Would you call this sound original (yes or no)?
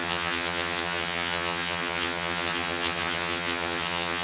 no